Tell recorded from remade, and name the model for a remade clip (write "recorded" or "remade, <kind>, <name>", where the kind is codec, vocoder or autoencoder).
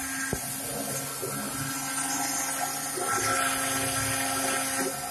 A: recorded